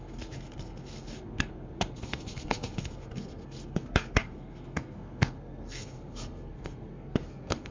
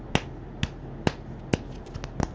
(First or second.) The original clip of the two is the second